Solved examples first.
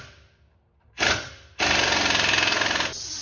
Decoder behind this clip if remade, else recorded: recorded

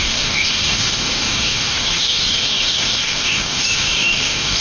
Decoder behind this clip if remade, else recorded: remade, codec, DAC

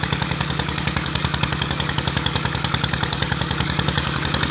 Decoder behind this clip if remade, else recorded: remade, codec, DAC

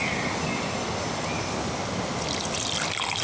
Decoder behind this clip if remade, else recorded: recorded